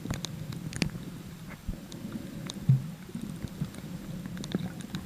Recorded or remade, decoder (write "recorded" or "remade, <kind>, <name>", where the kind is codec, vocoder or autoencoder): recorded